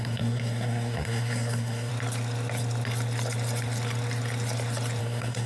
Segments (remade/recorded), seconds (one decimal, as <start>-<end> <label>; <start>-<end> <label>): 0.0-1.9 remade; 1.9-5.0 recorded; 5.0-5.5 remade